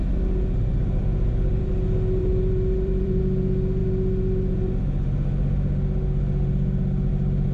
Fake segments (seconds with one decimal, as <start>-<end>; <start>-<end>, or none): 0.7-1.7; 2.2-3.2